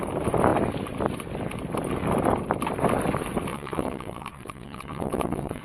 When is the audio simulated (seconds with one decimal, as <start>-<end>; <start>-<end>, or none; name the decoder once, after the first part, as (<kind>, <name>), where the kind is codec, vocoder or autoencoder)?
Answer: 3.5-5.6 (vocoder, WaveNeXt)

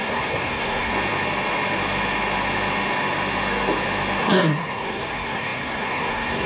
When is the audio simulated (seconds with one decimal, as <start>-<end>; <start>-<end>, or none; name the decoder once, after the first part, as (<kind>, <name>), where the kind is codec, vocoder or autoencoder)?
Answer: 0.0-0.9 (codec, SNAC); 4.2-6.5

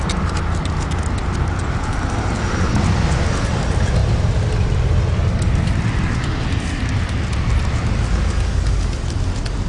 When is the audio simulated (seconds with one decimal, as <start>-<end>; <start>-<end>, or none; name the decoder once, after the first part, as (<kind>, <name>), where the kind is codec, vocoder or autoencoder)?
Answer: none

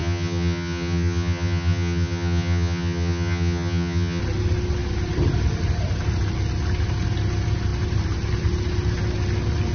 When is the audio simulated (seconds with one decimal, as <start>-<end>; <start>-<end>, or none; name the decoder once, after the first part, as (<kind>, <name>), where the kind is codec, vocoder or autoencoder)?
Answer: 0.0-4.2 (vocoder, HiFi-GAN)

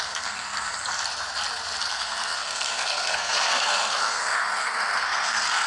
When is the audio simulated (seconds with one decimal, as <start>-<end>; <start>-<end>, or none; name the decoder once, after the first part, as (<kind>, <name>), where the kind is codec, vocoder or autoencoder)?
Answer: 0.0-0.7 (codec, SNAC); 1.8-5.7

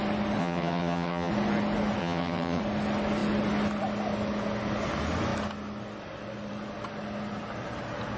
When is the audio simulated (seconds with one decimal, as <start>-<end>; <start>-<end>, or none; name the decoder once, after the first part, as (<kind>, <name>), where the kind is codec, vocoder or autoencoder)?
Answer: 0.4-1.3 (vocoder, HiFi-GAN); 2.0-2.6

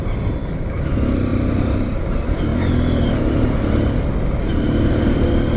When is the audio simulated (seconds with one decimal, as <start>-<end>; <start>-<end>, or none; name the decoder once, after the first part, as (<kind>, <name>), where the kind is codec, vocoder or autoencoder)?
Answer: 0.4-0.9 (autoencoder, DAC-VAE)

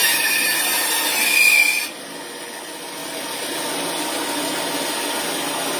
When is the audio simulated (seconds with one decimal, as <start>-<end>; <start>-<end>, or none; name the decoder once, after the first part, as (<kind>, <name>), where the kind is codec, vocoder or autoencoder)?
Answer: 0.0-1.2 (vocoder, BigVGAN v2); 3.0-3.6